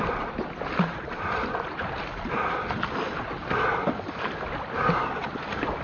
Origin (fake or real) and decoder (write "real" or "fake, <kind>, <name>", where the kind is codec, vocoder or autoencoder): real